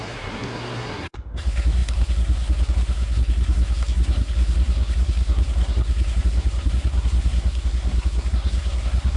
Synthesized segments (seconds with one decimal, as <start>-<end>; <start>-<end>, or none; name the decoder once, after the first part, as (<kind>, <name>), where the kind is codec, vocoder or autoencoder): 0.0-9.2 (codec, SNAC)